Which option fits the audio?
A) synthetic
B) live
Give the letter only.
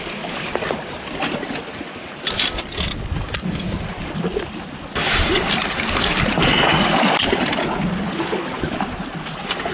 B